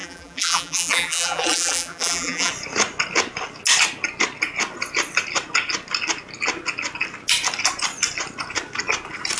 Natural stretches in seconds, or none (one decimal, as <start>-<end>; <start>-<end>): 2.5-9.4